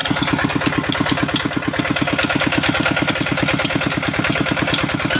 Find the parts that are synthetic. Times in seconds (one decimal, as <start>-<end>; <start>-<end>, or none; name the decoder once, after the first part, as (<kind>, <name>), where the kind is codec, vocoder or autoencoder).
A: none

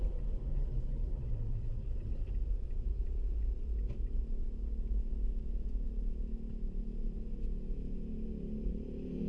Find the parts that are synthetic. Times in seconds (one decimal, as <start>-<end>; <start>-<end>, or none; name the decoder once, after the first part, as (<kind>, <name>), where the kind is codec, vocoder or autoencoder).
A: 0.5-2.3 (codec, HILCodec)

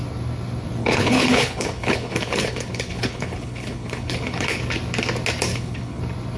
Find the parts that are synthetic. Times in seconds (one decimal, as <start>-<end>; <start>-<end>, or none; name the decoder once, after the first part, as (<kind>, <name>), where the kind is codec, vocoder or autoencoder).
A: 0.8-4.6 (codec, HILCodec); 5.5-6.0